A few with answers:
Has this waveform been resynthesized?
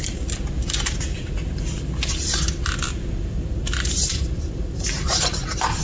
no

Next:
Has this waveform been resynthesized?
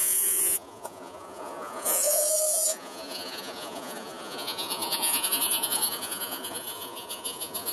yes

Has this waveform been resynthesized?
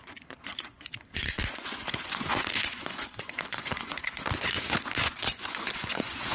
yes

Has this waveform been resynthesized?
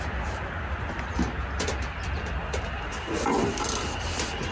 no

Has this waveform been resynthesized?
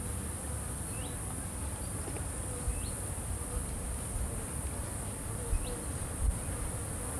no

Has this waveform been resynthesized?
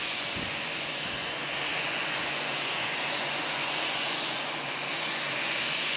yes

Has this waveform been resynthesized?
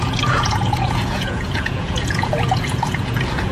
yes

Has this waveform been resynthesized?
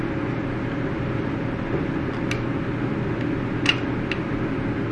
no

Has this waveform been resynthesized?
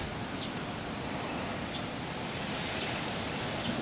no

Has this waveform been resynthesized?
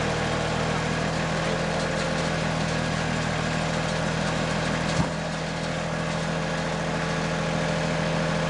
no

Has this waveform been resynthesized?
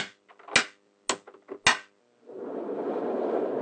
no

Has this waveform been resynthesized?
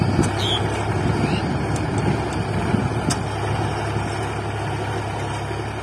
no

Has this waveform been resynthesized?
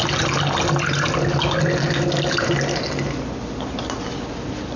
no